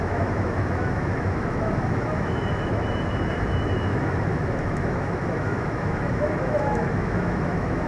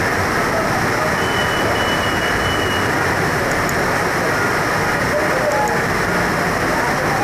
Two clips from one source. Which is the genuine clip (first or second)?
second